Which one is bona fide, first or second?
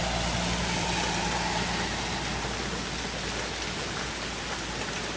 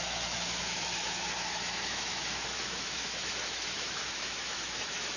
first